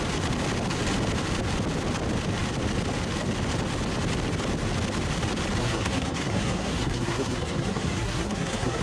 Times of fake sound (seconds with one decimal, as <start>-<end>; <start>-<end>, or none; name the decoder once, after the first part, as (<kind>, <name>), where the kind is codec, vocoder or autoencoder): 5.6-8.8 (codec, SNAC)